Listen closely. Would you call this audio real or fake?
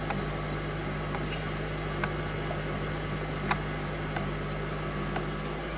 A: real